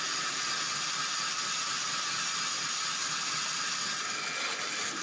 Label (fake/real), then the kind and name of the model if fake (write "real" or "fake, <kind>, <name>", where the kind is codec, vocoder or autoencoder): real